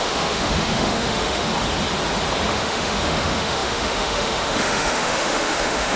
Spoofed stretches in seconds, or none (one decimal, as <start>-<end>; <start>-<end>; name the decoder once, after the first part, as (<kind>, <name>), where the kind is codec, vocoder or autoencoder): 0.0-1.5 (autoencoder, DAC-VAE); 2.5-6.0